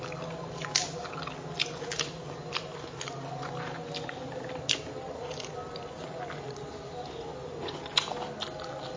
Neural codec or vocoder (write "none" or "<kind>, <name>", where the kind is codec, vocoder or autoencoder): none